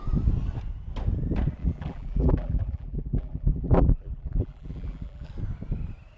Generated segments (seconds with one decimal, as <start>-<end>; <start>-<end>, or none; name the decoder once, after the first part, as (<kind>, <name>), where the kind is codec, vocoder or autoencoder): 1.6-5.3 (vocoder, BigVGAN v2)